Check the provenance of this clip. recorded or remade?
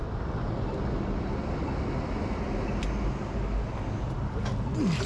recorded